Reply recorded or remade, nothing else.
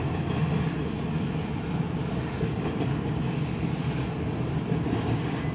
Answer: recorded